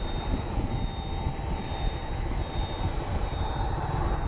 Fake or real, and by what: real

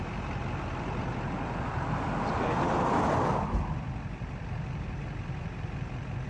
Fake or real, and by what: fake, vocoder, BigVGAN v2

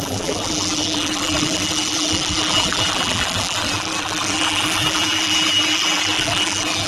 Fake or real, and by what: fake, vocoder, BigVGAN v2